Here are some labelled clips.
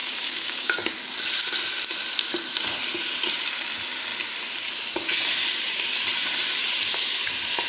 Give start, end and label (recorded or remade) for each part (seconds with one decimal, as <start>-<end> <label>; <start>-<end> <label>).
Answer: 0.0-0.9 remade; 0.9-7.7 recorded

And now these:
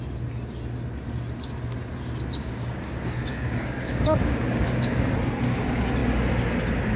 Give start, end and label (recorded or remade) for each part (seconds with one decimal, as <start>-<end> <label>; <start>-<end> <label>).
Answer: 0.0-2.4 recorded; 2.4-5.1 remade; 5.1-7.0 recorded

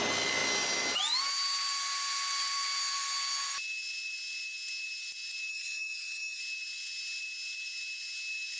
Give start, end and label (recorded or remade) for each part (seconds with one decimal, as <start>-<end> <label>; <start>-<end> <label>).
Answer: 0.0-5.5 recorded; 5.5-6.4 remade; 6.4-8.6 recorded

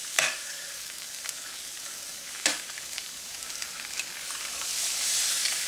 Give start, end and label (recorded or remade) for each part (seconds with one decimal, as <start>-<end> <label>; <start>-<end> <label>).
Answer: 0.0-4.7 remade; 4.7-5.3 recorded; 5.3-5.7 remade

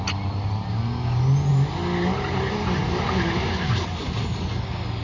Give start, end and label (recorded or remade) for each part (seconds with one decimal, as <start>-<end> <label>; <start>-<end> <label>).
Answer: 0.0-5.0 recorded